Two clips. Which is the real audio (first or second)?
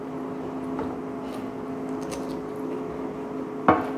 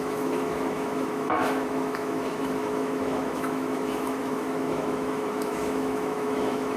first